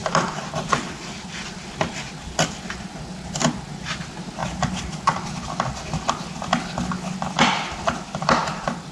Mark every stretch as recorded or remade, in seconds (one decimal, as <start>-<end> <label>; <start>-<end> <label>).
0.0-8.9 recorded